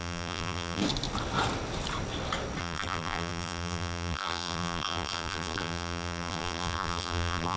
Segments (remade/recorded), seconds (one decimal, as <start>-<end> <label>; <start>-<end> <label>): 0.0-0.8 remade; 0.8-2.6 recorded; 2.6-7.6 remade